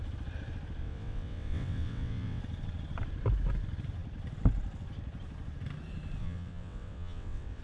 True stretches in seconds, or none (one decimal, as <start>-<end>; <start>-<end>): 0.0-0.8; 2.4-6.2